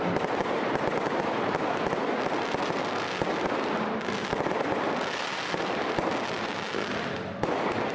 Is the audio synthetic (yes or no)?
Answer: no